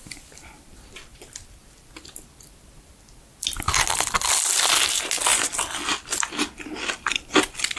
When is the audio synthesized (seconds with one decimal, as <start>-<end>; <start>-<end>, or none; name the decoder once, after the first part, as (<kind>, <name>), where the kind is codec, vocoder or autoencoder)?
none